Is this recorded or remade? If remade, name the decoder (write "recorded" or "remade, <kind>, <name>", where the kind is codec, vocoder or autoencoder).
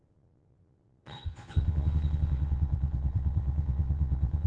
remade, vocoder, Vocos